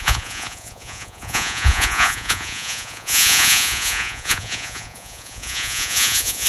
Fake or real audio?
fake